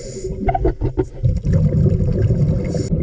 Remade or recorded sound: recorded